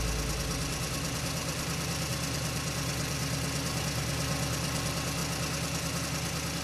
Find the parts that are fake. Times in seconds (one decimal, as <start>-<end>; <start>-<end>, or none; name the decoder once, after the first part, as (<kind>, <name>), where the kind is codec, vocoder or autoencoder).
1.4-3.8 (vocoder, BigVGAN v2)